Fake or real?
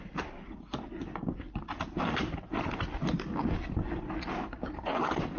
real